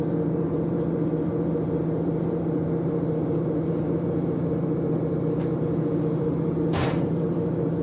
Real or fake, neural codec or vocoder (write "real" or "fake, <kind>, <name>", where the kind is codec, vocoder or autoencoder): fake, vocoder, BigVGAN v2